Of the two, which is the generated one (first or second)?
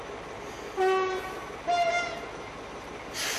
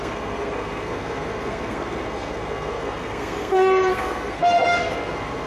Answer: second